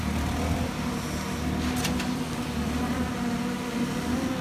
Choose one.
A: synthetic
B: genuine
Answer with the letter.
B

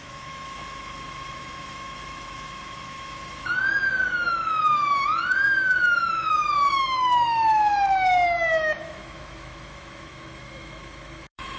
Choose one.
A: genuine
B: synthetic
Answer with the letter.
B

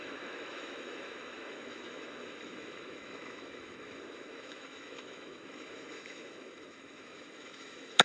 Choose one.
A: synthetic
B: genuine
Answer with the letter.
A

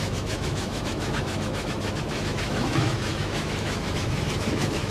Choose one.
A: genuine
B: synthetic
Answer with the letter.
B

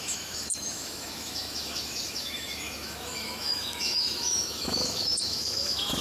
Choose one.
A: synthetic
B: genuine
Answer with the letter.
A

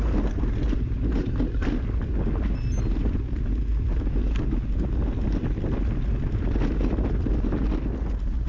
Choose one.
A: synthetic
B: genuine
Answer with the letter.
B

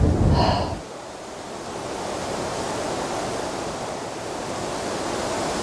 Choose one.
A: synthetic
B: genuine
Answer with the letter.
B